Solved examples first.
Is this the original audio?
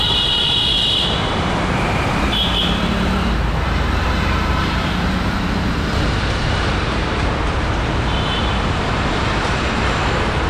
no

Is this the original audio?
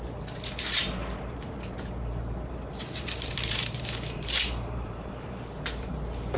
no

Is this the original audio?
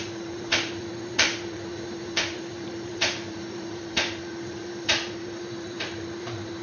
no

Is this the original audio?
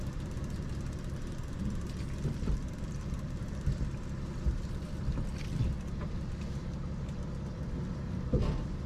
no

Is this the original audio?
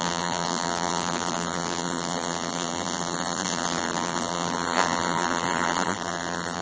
no